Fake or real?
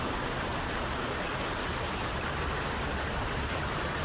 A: real